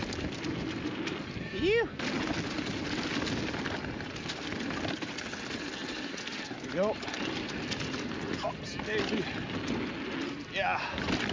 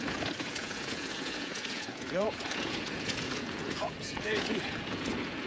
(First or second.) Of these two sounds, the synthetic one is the second